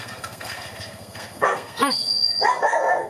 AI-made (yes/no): yes